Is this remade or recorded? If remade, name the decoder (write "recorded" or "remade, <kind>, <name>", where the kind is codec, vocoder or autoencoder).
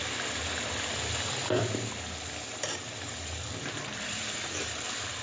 remade, vocoder, BigVGAN v2